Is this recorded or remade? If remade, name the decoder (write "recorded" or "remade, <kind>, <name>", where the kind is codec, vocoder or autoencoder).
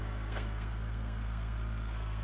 remade, codec, SNAC